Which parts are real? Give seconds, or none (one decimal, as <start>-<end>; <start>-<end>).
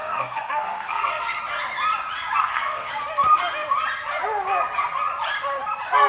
1.4-2.4; 2.9-6.1